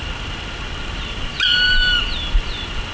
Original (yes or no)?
yes